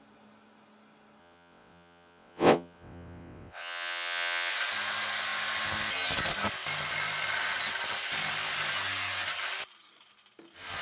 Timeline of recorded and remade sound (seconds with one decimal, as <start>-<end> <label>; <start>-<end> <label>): 0.0-1.2 recorded; 1.2-4.5 remade; 4.5-10.8 recorded

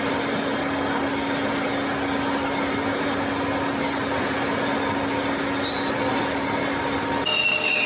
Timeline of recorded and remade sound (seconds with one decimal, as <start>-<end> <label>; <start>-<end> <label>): 0.0-7.9 recorded